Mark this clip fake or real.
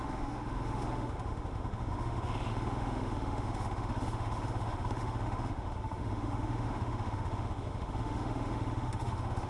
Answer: fake